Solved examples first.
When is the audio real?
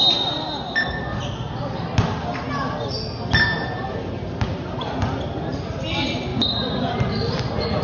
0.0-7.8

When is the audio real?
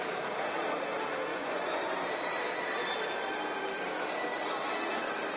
0.0-1.3; 1.9-5.4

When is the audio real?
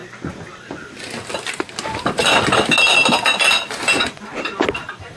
0.0-3.8; 4.3-5.2